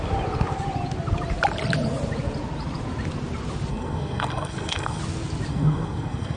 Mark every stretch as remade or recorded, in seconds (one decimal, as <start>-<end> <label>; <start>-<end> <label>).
0.0-3.7 recorded; 3.7-5.0 remade; 5.0-5.5 recorded; 5.5-6.4 remade